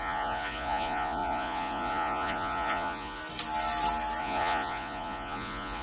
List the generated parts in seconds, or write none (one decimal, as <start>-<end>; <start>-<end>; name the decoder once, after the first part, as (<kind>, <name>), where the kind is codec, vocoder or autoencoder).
0.0-3.2 (vocoder, Vocos); 4.2-5.8

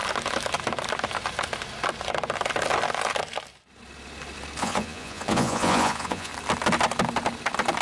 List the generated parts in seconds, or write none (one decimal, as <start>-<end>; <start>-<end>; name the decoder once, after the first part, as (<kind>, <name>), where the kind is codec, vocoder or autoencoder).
4.6-6.3 (vocoder, Vocos)

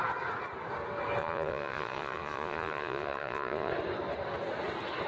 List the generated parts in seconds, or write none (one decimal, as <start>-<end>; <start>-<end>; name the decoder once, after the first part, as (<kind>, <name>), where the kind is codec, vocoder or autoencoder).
1.2-3.7 (vocoder, Vocos)